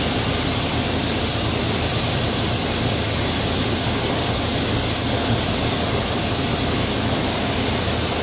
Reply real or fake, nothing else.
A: real